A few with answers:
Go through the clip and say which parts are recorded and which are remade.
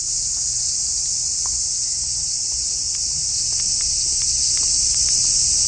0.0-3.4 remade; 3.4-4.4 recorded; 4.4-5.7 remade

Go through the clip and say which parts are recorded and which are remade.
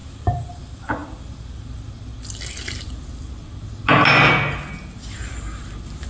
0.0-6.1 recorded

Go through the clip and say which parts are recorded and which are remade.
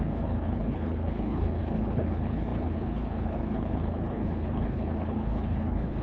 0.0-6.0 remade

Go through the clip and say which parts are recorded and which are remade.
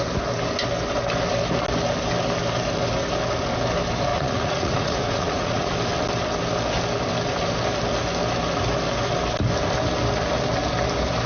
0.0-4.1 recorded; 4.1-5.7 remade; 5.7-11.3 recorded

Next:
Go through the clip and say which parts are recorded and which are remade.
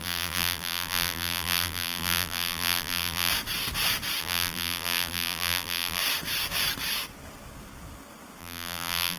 0.0-3.3 remade; 3.3-4.2 recorded; 4.2-6.0 remade; 6.0-8.4 recorded; 8.4-9.2 remade